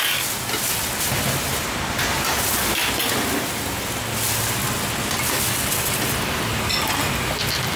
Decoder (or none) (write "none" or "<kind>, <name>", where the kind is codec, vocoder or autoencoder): none